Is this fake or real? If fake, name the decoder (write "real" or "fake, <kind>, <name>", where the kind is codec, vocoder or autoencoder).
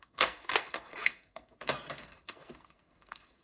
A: fake, codec, SNAC